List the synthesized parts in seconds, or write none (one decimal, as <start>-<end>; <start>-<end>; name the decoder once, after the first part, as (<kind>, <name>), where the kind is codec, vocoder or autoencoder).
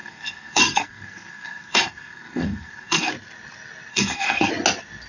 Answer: 0.0-3.1 (codec, SNAC); 3.9-4.5